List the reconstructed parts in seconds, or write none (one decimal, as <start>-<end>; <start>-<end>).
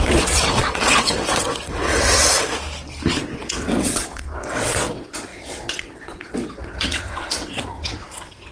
0.0-2.2; 3.2-8.5